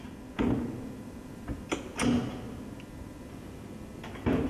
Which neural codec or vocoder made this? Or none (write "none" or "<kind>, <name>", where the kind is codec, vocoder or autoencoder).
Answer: none